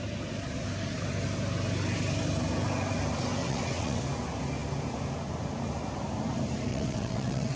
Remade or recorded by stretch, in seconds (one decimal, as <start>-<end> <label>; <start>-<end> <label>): 0.0-3.4 recorded; 3.4-4.0 remade; 4.0-6.7 recorded; 6.7-7.6 remade